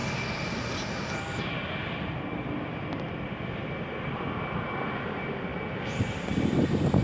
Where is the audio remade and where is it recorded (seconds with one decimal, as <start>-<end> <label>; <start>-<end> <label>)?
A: 0.0-7.0 recorded